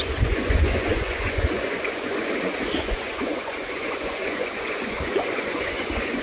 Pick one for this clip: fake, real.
fake